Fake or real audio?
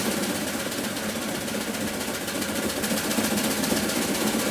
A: real